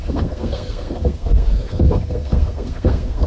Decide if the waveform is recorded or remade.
remade